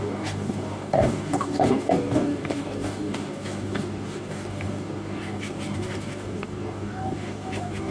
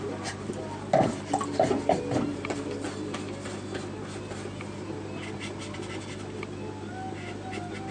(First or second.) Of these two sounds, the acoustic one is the second